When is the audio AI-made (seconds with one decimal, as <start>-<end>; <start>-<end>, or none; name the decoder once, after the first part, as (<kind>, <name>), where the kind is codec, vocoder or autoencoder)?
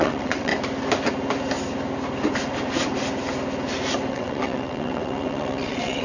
0.0-0.5 (vocoder, WaveNeXt); 4.1-6.0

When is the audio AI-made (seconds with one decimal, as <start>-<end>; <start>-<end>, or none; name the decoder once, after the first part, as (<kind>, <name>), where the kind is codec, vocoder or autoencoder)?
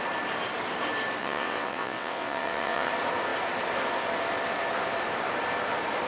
1.2-2.9 (vocoder, WaveNeXt)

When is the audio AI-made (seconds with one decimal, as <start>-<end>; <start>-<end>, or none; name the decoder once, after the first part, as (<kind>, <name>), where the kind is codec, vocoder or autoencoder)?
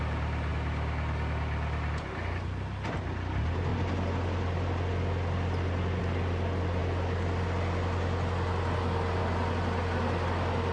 none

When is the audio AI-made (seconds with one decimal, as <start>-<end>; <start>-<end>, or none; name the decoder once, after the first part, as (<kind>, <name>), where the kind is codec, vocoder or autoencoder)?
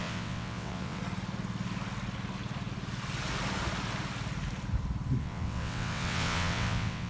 0.0-1.0 (vocoder, WaveNeXt); 5.2-7.1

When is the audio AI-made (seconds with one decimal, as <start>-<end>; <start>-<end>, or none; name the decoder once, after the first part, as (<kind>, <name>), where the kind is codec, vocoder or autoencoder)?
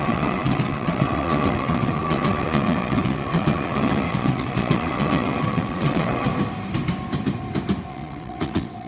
0.0-6.3 (vocoder, WaveNeXt); 7.9-8.9